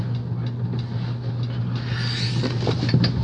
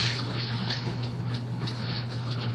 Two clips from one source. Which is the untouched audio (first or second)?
first